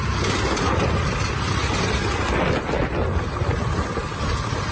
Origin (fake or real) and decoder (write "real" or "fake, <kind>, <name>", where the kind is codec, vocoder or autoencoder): real